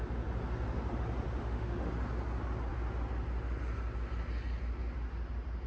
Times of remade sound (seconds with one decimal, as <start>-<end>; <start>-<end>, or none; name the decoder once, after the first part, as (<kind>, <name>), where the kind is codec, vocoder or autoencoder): 1.4-1.9 (autoencoder, DAC-VAE)

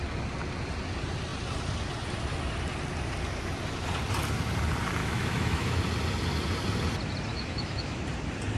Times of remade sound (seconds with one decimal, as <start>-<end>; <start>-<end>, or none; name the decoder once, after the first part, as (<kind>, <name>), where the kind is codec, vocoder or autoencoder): 5.0-5.8 (autoencoder, DAC-VAE); 7.3-8.0

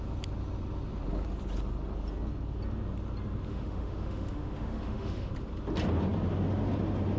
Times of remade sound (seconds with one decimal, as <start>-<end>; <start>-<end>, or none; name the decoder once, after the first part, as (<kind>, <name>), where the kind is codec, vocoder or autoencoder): 3.5-5.3 (autoencoder, DAC-VAE)

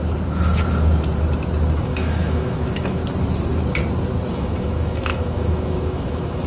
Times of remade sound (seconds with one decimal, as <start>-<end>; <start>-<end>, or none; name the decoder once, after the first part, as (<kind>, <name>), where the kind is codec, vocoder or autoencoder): 1.8-3.0 (autoencoder, DAC-VAE); 4.3-6.5

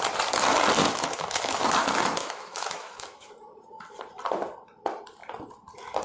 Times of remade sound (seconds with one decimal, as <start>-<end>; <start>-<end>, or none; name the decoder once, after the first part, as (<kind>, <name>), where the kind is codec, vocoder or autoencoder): 0.8-1.6 (autoencoder, DAC-VAE); 2.2-3.3

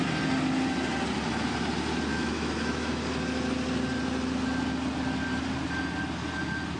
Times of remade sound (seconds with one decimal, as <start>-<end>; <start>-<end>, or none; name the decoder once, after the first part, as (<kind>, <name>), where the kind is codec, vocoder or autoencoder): 2.1-3.0 (autoencoder, DAC-VAE)

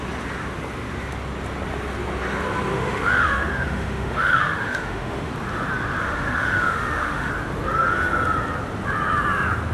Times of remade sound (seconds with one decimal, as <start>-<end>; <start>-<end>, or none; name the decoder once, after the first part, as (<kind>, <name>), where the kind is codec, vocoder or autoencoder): 2.7-5.3 (autoencoder, DAC-VAE); 6.0-7.3